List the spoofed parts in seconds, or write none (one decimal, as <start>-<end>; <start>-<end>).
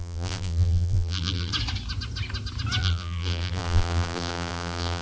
0.0-1.5; 2.8-5.0